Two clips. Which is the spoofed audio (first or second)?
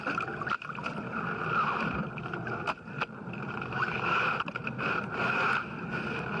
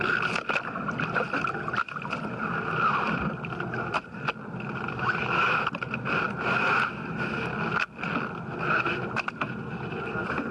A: first